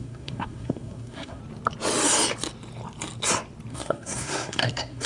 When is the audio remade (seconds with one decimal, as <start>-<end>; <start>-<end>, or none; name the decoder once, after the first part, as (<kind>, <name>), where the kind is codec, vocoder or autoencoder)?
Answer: 0.0-1.4 (codec, SNAC); 3.7-5.1